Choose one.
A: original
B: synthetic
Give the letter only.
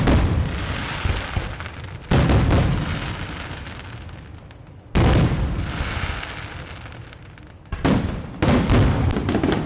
A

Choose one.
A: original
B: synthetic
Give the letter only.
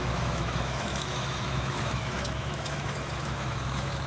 B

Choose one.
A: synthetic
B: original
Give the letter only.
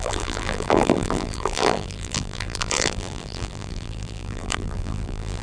A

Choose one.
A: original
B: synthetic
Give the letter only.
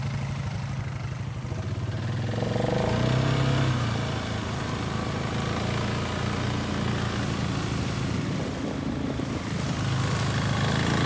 A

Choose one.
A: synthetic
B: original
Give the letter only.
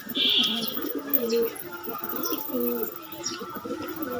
B